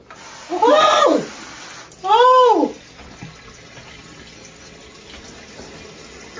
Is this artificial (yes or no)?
no